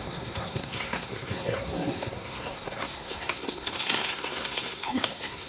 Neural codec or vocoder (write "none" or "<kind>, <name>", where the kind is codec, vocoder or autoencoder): codec, SNAC